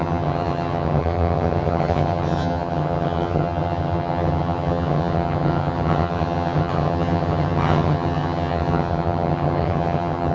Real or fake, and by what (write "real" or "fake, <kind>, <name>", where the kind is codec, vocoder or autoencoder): fake, vocoder, HiFi-GAN